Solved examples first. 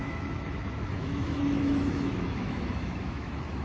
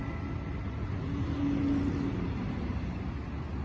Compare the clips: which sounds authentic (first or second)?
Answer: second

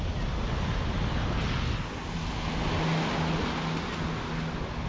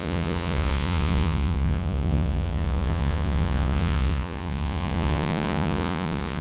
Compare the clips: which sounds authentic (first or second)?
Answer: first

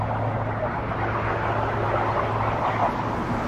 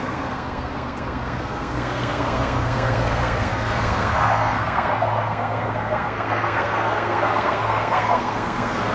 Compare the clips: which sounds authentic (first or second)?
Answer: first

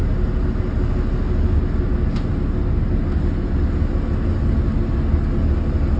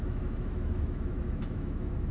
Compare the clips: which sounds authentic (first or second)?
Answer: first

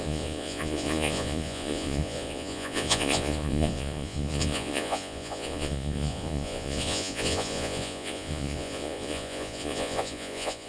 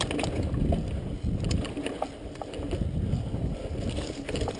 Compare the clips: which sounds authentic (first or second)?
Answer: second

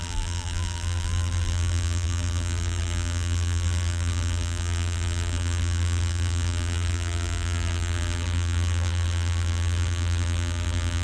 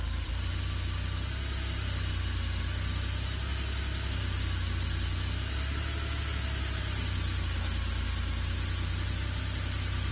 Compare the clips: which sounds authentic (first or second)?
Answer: second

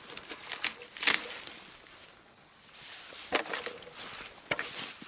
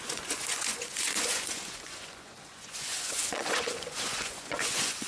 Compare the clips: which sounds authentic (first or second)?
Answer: first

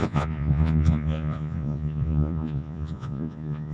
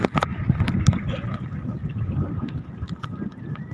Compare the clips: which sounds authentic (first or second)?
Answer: second